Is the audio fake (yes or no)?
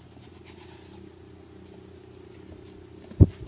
no